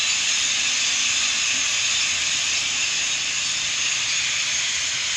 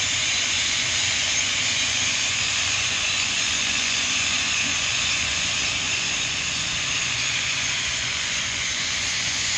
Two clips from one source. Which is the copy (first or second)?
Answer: second